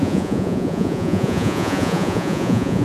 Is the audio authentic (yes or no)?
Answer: no